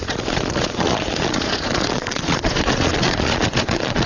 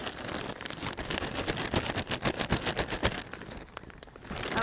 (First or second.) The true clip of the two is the second